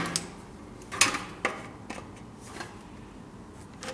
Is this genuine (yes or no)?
yes